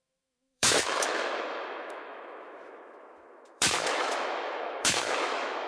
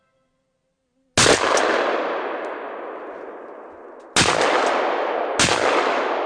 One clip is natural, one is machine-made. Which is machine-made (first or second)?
first